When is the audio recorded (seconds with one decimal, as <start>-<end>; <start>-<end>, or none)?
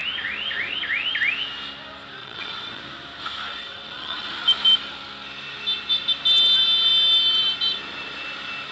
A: 0.0-2.2; 2.8-3.5; 4.3-8.7